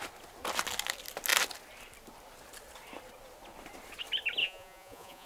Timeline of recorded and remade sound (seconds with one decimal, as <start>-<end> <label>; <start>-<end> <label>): 0.0-4.4 recorded; 4.4-5.3 remade